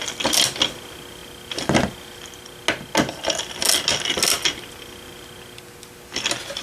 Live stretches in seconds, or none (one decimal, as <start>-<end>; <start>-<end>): 0.0-6.6